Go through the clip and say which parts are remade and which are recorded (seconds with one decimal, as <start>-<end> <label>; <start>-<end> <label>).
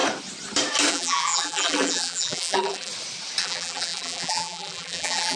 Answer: 0.0-0.9 recorded; 0.9-2.9 remade; 2.9-3.4 recorded; 3.4-5.4 remade